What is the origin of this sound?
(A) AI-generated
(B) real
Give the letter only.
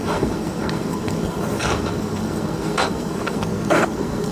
A